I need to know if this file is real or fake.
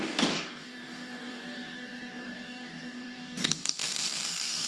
fake